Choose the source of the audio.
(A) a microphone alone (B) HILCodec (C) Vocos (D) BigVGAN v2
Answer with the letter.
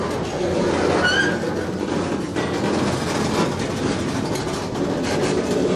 A